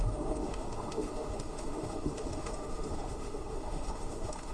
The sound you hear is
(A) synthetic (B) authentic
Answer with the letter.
A